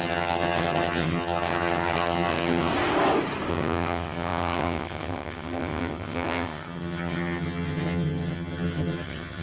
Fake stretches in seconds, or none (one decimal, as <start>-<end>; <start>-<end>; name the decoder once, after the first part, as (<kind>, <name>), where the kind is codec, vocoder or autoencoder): 0.0-2.7 (vocoder, HiFi-GAN); 3.5-9.4